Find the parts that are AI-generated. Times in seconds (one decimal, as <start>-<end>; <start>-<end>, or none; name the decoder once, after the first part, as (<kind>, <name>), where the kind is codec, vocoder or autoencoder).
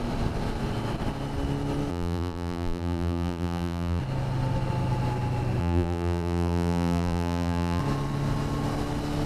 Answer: 1.9-4.0 (vocoder, BigVGAN v2); 5.6-7.8